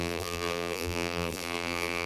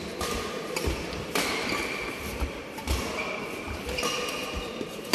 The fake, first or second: first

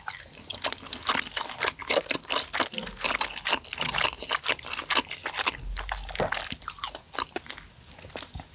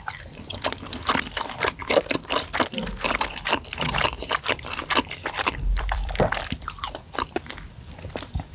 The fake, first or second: second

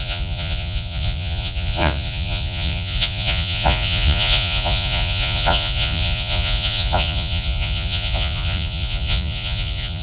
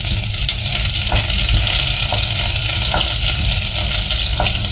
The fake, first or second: first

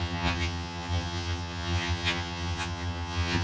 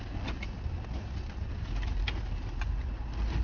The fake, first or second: first